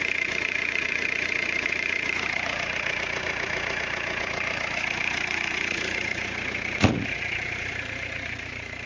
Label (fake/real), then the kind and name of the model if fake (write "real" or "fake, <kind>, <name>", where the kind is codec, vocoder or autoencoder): fake, vocoder, Vocos